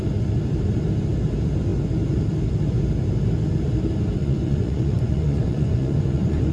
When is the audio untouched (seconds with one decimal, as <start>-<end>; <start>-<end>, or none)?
0.0-4.2